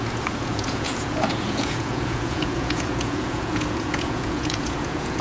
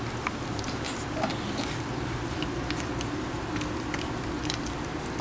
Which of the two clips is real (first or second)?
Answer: second